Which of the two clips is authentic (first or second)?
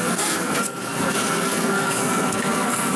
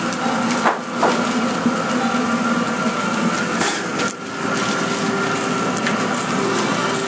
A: second